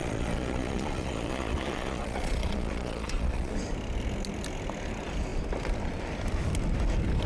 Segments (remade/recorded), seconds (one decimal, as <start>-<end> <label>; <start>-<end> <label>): 0.0-3.5 remade; 3.5-7.3 recorded